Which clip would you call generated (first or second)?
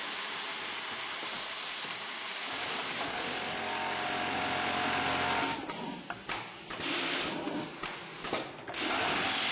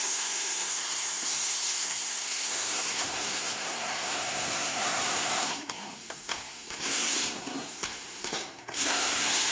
second